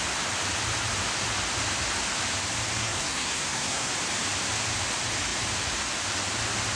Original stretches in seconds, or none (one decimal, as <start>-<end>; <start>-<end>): 0.0-2.8; 3.9-6.8